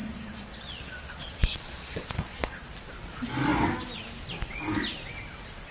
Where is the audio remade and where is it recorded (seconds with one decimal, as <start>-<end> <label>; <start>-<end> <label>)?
0.0-2.7 remade; 2.7-5.7 recorded